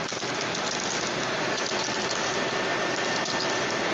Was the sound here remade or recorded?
recorded